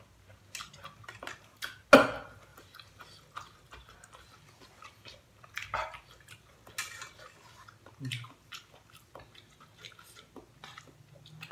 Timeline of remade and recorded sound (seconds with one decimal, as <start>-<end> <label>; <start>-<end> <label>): 0.0-2.5 recorded; 2.5-6.3 remade; 6.3-11.5 recorded